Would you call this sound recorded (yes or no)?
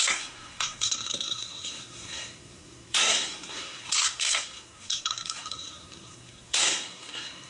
no